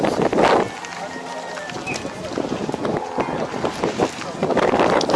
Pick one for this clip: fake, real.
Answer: real